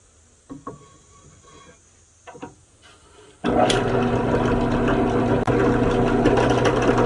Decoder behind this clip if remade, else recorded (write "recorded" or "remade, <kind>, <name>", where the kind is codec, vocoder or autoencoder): recorded